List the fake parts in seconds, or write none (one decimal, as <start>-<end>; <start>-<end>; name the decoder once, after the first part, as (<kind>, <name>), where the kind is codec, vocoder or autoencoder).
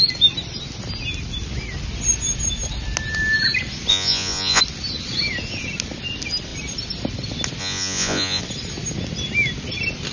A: 3.9-4.6 (vocoder, Vocos); 7.6-8.4